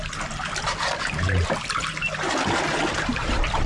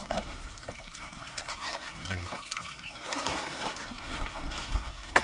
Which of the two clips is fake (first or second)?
second